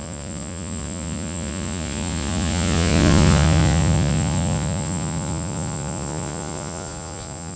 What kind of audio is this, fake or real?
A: fake